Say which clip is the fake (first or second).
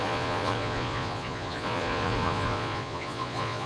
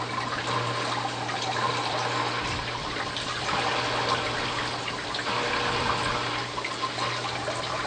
first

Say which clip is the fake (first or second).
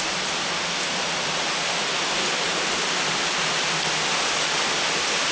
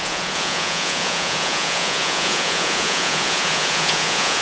second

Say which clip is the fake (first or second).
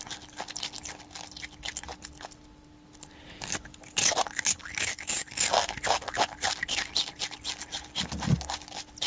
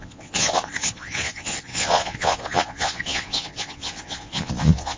second